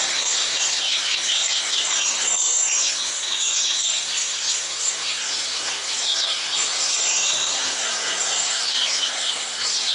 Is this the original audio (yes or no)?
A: no